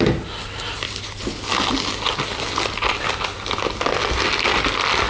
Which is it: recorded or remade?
recorded